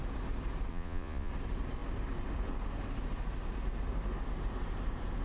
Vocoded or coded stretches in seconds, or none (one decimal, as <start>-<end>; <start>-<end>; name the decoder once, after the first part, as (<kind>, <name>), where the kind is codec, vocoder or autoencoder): 0.7-1.3 (vocoder, Vocos)